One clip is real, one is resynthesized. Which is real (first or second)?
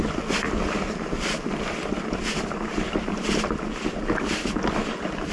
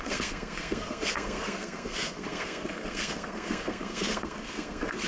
first